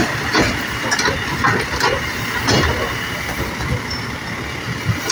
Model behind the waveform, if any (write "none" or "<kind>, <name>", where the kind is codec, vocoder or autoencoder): none